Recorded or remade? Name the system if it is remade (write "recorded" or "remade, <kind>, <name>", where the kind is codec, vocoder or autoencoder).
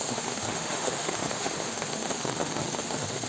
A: remade, autoencoder, DAC-VAE